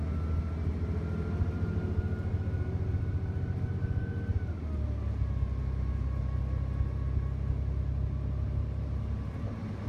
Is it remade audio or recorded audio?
recorded